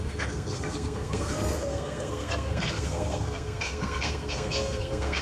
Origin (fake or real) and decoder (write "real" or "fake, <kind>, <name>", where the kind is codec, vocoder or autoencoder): fake, codec, SNAC